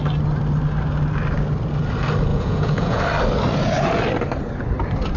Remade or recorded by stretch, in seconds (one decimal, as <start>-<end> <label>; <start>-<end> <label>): 0.0-2.3 recorded; 2.3-3.0 remade; 3.0-5.2 recorded